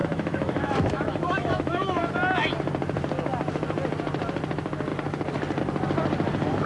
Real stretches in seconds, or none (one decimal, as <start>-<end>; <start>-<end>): 2.1-6.7